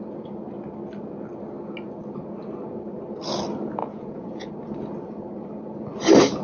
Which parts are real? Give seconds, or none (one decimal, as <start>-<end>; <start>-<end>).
0.0-3.8; 4.5-6.4